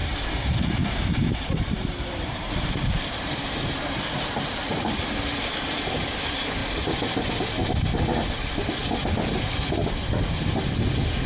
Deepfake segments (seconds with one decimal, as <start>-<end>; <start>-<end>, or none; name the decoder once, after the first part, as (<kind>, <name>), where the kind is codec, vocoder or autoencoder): 0.0-5.0 (vocoder, BigVGAN v2); 6.6-7.3